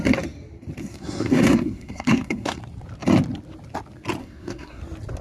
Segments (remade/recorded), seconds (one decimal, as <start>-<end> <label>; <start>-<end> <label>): 0.0-0.8 recorded; 0.8-2.6 remade; 2.6-4.2 recorded; 4.2-4.8 remade; 4.8-5.2 recorded